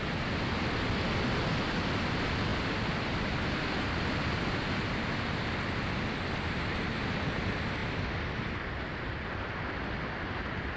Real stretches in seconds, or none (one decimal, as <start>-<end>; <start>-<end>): 0.0-10.8